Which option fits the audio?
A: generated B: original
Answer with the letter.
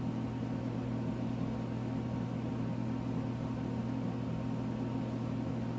B